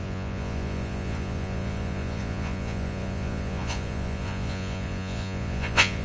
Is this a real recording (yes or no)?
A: no